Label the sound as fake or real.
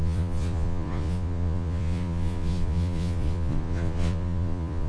fake